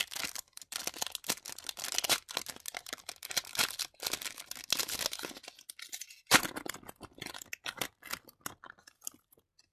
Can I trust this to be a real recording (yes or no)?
yes